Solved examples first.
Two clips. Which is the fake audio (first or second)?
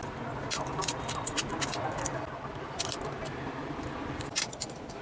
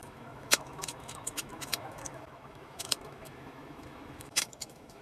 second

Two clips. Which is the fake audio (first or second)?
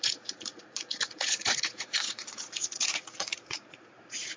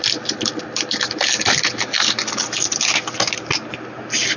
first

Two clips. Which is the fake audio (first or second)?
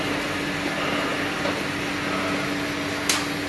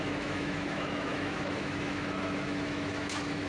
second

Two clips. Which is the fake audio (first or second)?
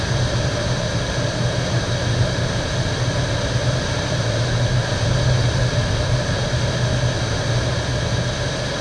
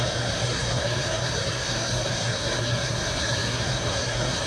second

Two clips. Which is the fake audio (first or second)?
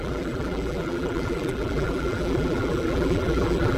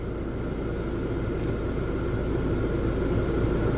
first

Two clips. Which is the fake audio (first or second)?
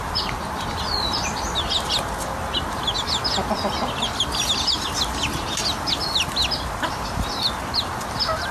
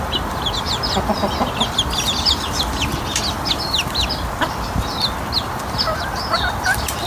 second